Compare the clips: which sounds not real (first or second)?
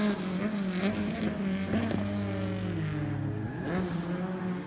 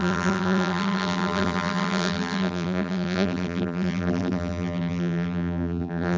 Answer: second